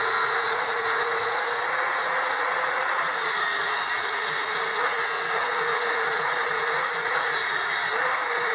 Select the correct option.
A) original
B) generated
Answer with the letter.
B